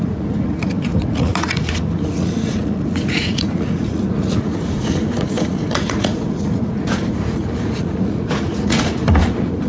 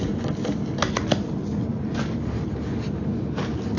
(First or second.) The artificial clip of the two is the first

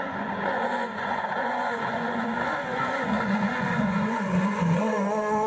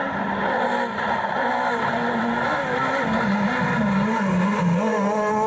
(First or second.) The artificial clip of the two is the first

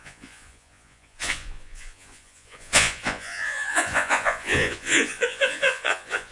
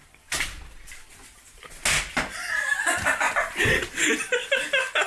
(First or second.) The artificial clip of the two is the first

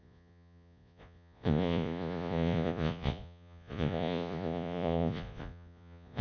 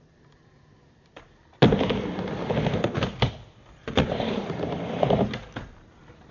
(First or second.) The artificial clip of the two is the first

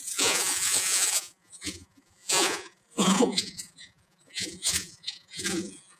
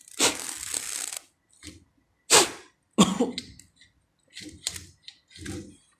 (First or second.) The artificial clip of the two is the first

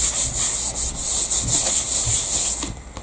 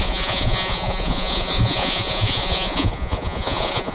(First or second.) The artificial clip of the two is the second